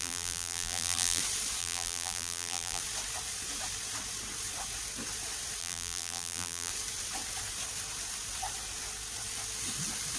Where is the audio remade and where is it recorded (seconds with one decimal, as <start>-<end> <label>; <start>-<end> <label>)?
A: 0.0-1.2 remade; 1.2-1.6 recorded; 1.6-2.8 remade; 2.8-5.6 recorded; 5.6-6.7 remade; 6.7-10.2 recorded